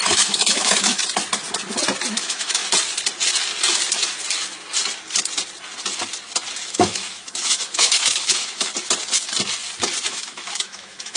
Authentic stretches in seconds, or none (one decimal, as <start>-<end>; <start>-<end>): 1.0-2.1; 2.6-6.7; 8.7-10.1